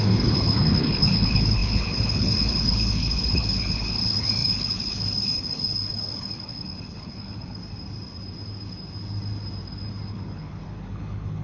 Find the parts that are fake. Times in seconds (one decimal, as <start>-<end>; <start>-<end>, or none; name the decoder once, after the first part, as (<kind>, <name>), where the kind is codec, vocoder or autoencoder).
0.0-7.6 (codec, HILCodec); 10.1-11.4